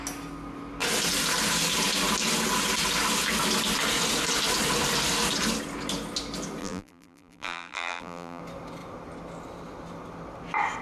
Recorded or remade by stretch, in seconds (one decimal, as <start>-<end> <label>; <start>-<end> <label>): 0.0-6.6 recorded; 6.6-8.4 remade; 8.4-10.8 recorded